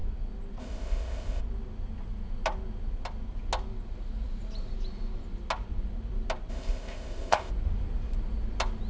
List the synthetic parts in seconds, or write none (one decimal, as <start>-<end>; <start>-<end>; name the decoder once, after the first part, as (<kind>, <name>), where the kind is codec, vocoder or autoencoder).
0.6-1.4 (codec, ZipCodec); 6.5-7.5